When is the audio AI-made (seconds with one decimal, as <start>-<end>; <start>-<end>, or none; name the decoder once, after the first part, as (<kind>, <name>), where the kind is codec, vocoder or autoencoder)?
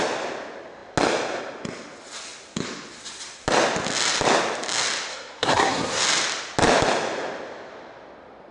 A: 5.1-6.0 (codec, SNAC)